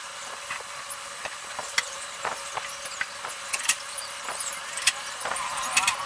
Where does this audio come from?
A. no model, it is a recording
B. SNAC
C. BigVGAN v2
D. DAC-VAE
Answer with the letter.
A